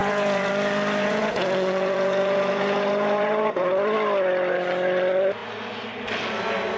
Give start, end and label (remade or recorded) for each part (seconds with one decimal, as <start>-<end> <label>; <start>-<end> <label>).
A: 0.0-0.5 remade; 0.5-1.0 recorded; 1.0-3.7 remade; 3.7-6.8 recorded